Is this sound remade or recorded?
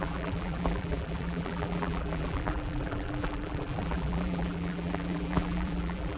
remade